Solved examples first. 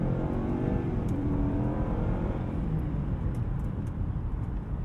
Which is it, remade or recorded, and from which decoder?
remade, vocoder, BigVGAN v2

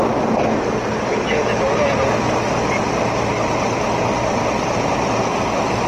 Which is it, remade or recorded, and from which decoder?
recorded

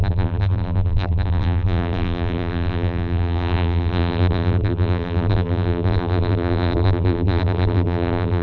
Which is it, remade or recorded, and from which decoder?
remade, vocoder, BigVGAN v2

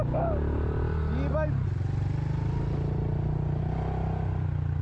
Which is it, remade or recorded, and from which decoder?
recorded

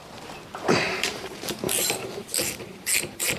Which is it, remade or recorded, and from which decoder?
remade, vocoder, BigVGAN v2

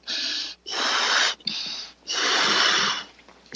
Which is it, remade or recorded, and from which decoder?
recorded